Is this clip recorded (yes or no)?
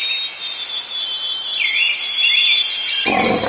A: yes